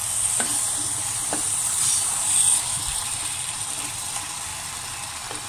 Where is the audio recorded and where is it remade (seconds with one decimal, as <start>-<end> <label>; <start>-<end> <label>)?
0.0-4.5 remade; 4.5-5.5 recorded